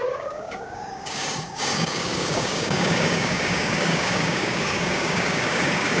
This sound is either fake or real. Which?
fake